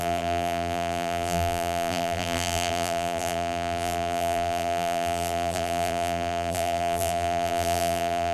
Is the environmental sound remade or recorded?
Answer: remade